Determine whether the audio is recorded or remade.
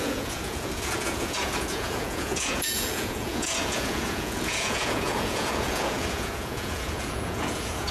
remade